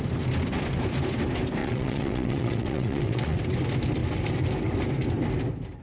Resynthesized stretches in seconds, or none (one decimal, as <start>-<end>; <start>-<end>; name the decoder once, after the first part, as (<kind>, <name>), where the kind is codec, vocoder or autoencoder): 1.6-3.4 (vocoder, WaveNeXt)